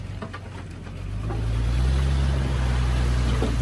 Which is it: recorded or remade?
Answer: recorded